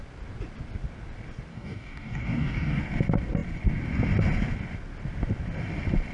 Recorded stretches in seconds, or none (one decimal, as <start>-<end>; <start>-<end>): 0.0-1.5; 2.8-6.1